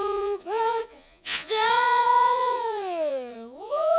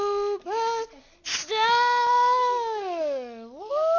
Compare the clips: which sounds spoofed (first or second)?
first